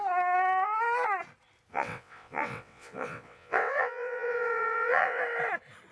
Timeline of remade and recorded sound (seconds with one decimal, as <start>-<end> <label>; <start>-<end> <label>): 0.0-1.7 recorded; 1.7-5.2 remade; 5.2-5.9 recorded